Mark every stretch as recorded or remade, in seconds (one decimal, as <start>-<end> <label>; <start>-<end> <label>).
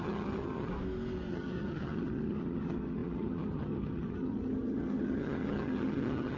0.0-0.7 remade; 0.7-1.3 recorded; 1.3-6.4 remade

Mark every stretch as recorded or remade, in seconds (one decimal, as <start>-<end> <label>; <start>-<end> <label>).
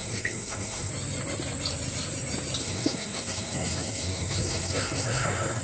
0.0-0.9 remade; 0.9-2.6 recorded; 2.6-5.6 remade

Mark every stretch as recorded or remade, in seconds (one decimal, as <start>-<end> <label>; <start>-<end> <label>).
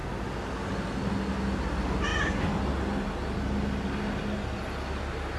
0.0-5.4 recorded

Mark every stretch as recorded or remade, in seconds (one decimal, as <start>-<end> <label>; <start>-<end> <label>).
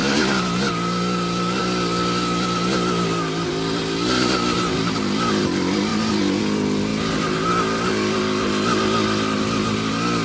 0.0-10.2 recorded